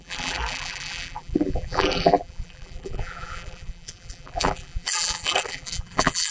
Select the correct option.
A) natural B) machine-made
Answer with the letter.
B